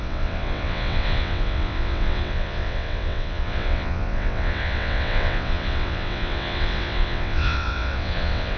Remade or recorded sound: remade